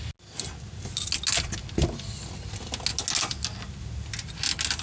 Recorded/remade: recorded